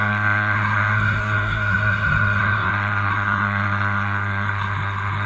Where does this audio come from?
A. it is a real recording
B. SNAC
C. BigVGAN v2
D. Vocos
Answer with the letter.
B